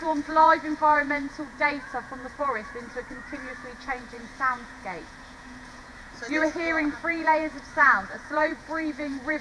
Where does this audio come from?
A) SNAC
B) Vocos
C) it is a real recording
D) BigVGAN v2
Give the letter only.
B